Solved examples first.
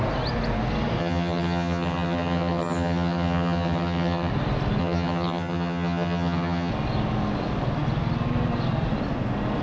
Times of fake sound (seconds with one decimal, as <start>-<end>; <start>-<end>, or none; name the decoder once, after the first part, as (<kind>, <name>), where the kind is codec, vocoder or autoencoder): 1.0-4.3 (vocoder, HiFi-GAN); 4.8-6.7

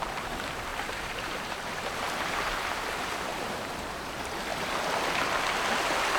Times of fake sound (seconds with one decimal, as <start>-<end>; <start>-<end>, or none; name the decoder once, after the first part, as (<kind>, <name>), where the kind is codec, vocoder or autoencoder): 0.7-1.7 (vocoder, BigVGAN v2); 3.3-4.1

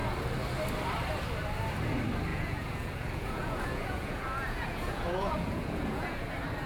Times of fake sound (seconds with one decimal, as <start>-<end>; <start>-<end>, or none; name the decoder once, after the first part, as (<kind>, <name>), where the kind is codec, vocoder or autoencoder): 2.3-6.3 (vocoder, Vocos)

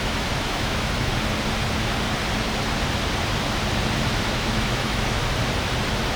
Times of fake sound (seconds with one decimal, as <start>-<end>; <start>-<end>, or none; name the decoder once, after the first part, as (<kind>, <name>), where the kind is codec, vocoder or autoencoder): 0.0-1.1 (autoencoder, DAC-VAE); 4.3-5.2

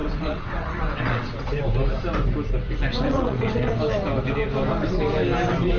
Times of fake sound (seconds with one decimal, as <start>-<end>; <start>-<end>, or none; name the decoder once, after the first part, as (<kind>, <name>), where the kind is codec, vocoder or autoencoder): 0.0-1.6 (vocoder, WaveNeXt); 2.9-3.7

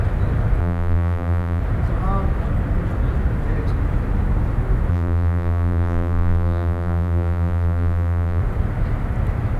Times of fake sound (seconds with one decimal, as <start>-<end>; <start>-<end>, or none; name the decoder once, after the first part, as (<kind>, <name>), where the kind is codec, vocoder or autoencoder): 0.6-1.6 (vocoder, BigVGAN v2); 4.9-8.4

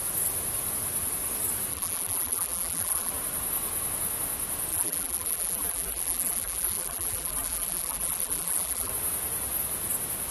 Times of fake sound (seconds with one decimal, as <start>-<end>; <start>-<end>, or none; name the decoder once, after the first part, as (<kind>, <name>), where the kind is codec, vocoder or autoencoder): 1.7-3.1 (vocoder, BigVGAN v2); 4.7-8.9